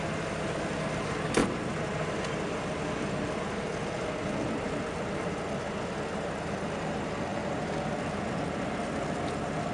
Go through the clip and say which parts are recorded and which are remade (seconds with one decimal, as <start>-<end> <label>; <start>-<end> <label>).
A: 0.0-9.7 recorded